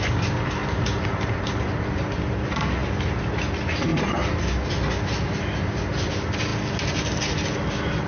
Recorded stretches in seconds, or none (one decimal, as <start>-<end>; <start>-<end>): 0.0-0.6; 2.3-2.8; 3.3-8.1